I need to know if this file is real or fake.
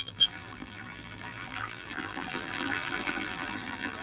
fake